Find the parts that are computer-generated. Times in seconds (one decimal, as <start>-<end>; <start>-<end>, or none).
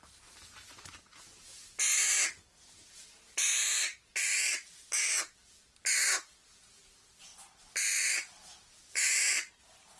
0.0-3.5; 5.2-7.3; 8.9-10.0